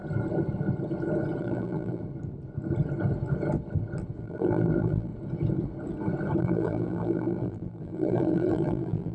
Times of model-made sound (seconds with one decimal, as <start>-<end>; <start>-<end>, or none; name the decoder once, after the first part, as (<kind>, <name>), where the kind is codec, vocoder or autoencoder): 1.4-2.0 (vocoder, BigVGAN v2); 4.2-5.1; 6.4-9.1